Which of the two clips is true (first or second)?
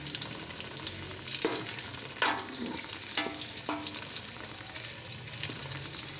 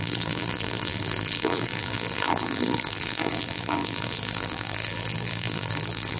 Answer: first